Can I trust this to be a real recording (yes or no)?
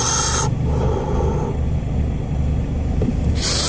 yes